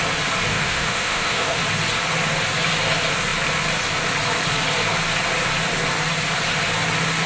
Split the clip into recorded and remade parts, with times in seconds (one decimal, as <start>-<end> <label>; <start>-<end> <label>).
0.0-0.5 recorded; 0.5-1.6 remade; 1.6-7.3 recorded

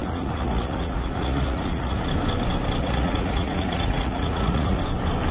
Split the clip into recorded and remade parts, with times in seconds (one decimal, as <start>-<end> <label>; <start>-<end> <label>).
0.0-2.1 remade; 2.1-2.8 recorded; 2.8-4.8 remade; 4.8-5.3 recorded